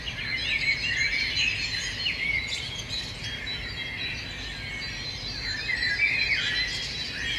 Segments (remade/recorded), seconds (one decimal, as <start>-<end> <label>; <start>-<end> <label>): 0.0-7.4 recorded